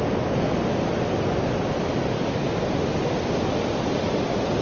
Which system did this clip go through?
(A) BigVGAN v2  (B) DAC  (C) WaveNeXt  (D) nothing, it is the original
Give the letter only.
D